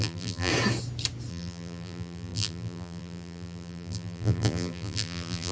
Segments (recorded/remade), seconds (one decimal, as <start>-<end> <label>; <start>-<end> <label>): 0.0-0.5 remade; 0.5-1.3 recorded; 1.3-5.5 remade